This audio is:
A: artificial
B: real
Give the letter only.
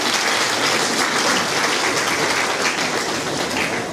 B